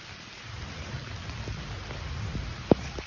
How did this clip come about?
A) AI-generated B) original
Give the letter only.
B